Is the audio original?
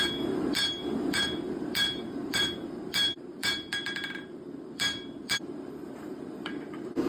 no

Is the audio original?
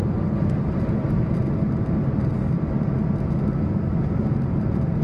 yes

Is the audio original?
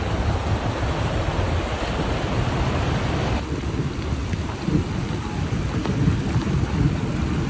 yes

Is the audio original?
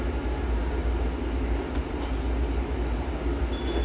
yes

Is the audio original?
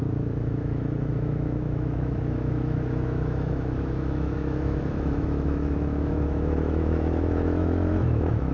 no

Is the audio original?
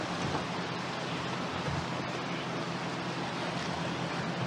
yes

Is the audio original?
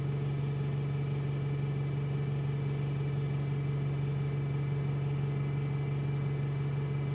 yes